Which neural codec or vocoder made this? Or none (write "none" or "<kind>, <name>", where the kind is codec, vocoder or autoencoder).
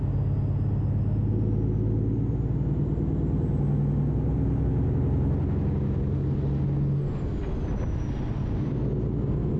none